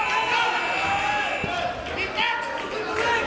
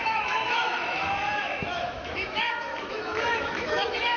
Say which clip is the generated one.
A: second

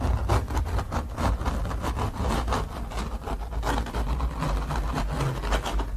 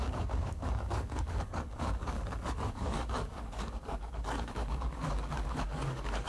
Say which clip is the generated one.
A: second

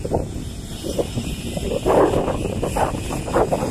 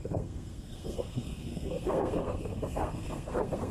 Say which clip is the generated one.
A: second